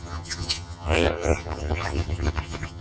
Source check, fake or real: fake